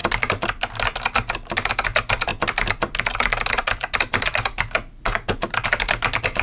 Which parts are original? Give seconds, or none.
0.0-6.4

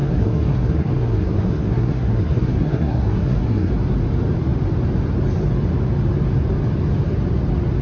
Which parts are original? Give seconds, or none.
3.7-7.8

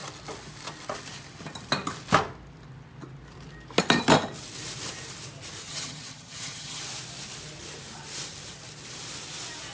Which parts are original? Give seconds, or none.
0.0-5.6; 6.8-9.7

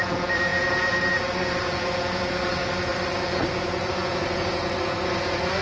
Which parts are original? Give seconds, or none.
2.9-3.5

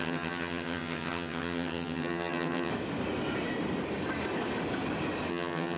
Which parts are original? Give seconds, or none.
2.7-5.3

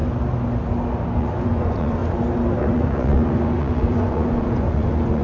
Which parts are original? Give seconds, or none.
0.0-1.2; 2.0-2.6

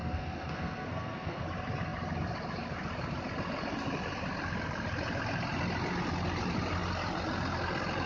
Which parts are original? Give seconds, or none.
1.4-8.1

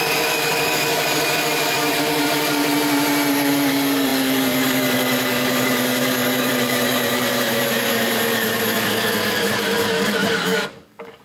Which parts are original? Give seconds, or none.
2.7-3.3